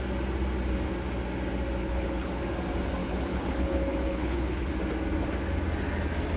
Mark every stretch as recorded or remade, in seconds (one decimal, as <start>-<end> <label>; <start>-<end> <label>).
0.0-1.8 recorded; 1.8-2.4 remade; 2.4-3.0 recorded; 3.0-4.7 remade; 4.7-6.4 recorded